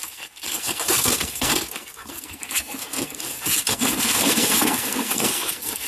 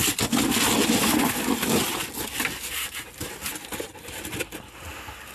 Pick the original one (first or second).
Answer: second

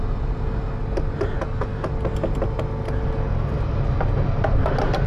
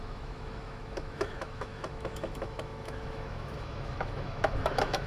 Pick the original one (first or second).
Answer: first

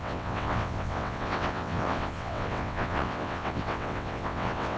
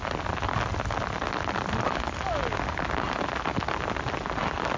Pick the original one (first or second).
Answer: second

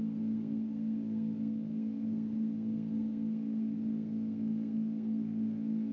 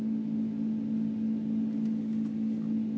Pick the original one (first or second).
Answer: second